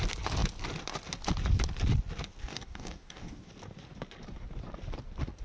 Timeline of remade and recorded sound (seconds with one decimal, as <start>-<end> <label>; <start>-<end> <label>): 0.0-2.4 recorded; 2.4-3.5 remade; 3.5-5.4 recorded